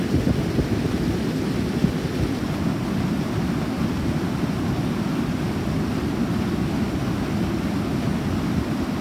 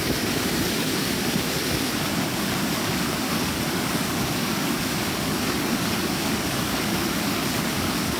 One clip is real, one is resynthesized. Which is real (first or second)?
first